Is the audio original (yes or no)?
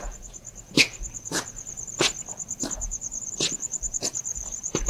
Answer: no